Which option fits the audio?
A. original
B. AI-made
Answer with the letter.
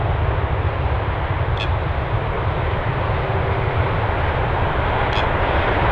A